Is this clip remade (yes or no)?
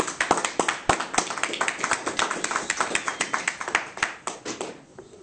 no